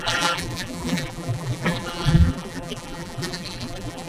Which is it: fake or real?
fake